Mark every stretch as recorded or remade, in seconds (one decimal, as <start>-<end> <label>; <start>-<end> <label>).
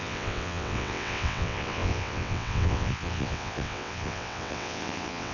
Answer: 0.0-5.3 remade